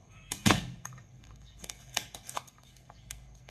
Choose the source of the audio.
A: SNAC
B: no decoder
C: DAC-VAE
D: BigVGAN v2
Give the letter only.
A